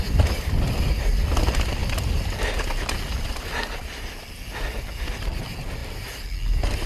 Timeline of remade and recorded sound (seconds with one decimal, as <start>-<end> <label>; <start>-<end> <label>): 0.0-5.8 recorded; 5.8-6.9 remade